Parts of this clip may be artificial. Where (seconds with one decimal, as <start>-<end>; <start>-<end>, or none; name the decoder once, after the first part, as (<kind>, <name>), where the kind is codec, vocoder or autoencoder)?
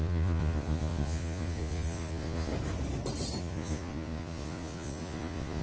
0.0-2.5 (vocoder, Vocos); 3.4-5.6